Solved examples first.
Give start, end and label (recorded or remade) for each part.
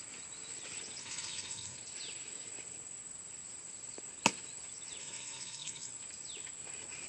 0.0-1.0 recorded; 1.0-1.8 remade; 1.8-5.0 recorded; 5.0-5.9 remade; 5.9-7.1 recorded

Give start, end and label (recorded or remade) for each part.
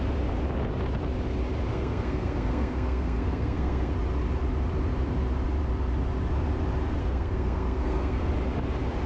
0.0-1.7 recorded; 1.7-3.9 remade; 3.9-7.0 recorded; 7.0-8.3 remade; 8.3-9.1 recorded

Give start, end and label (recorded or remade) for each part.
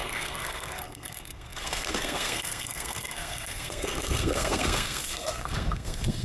0.0-6.2 remade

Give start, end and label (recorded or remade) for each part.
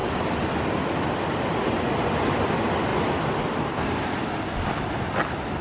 0.0-5.6 recorded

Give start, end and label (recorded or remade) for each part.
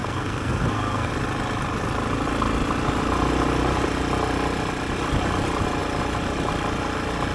0.0-1.1 remade; 1.1-7.3 recorded